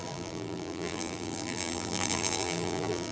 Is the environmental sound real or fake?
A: fake